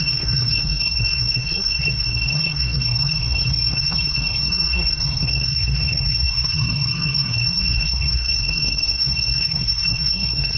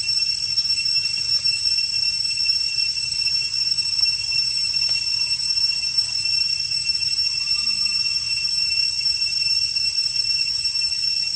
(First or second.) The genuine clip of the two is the second